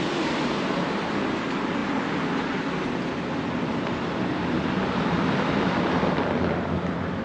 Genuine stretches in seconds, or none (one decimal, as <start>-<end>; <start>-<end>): 0.0-7.2